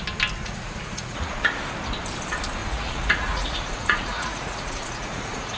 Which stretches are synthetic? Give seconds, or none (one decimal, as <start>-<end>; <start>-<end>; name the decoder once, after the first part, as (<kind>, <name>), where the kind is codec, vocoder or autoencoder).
0.4-1.6 (vocoder, Vocos); 2.6-5.6